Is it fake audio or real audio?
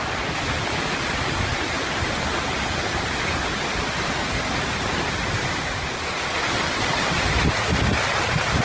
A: real